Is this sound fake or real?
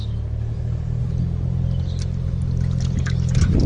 real